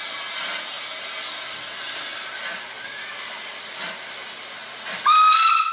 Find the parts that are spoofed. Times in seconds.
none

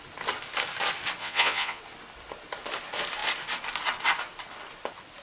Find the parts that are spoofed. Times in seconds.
1.2-1.8 (vocoder, Vocos)

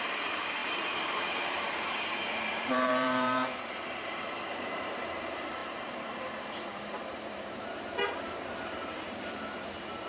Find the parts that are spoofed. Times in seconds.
0.0-10.1 (vocoder, BigVGAN v2)

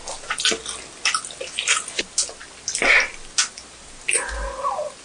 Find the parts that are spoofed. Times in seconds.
none

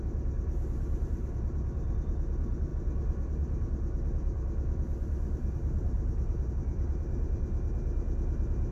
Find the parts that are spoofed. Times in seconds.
none

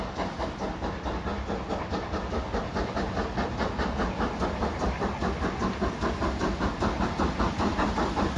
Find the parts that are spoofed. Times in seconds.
none